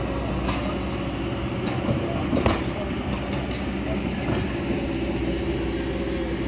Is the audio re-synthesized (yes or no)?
no